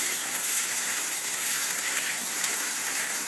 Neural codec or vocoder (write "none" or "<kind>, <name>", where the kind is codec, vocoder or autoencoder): codec, SNAC